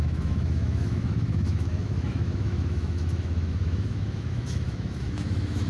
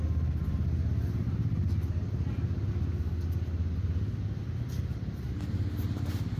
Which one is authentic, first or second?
second